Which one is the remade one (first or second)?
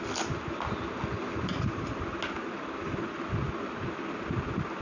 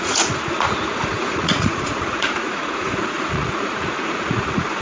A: second